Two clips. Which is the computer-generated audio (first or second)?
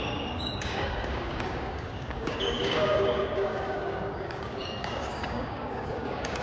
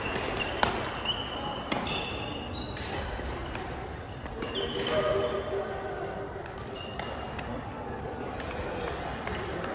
first